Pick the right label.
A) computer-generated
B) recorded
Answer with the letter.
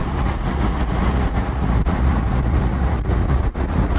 A